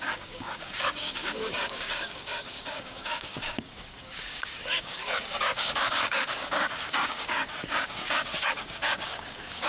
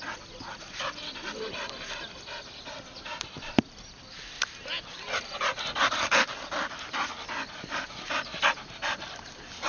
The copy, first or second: first